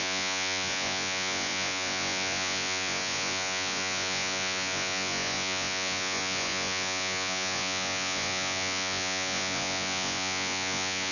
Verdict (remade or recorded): remade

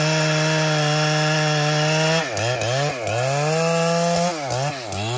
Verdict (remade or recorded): recorded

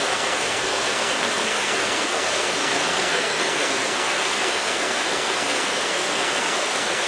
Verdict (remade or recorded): remade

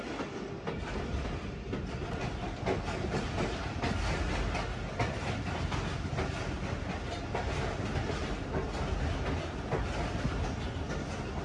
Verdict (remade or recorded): recorded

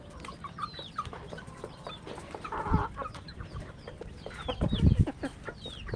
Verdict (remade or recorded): recorded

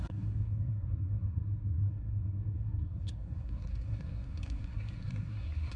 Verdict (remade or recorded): remade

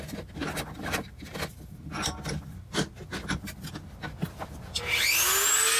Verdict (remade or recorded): recorded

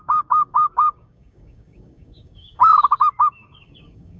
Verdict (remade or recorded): remade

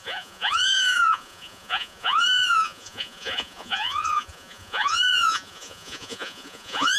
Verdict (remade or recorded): remade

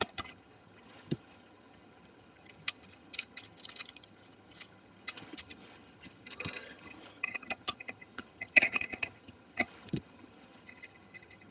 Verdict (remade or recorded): remade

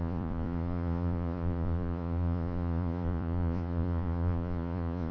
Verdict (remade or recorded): remade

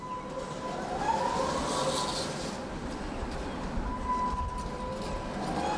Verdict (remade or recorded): recorded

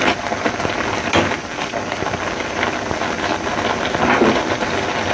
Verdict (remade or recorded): recorded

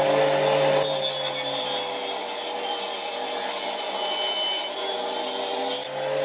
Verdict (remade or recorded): recorded